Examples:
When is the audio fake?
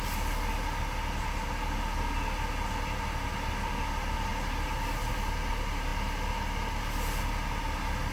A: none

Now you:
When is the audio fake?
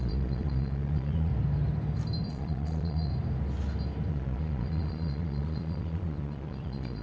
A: 0.0-1.3 (vocoder, Vocos); 2.3-3.1; 4.1-7.0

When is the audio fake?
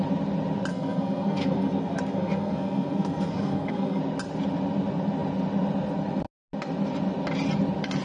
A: 0.7-4.0 (codec, SNAC)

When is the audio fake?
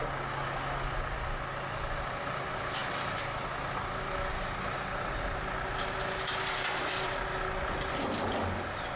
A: none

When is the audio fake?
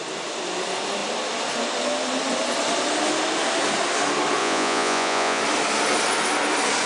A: 4.4-5.4 (vocoder, Vocos)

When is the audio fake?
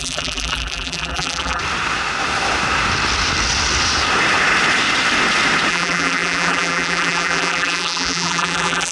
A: 0.0-1.6 (vocoder, BigVGAN v2); 5.7-8.9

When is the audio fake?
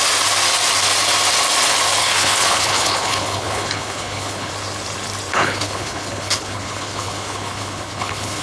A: 2.0-4.5 (codec, HILCodec); 5.3-8.4